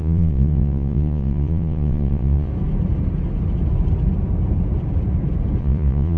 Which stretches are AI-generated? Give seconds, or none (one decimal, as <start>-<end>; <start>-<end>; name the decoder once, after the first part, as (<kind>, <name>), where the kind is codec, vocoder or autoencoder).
0.0-2.5 (vocoder, Vocos); 5.6-6.2